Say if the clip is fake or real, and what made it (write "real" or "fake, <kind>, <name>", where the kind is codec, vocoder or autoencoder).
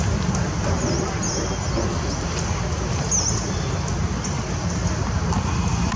real